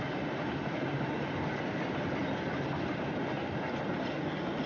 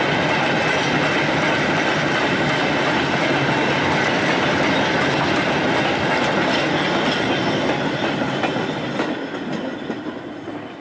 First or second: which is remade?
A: first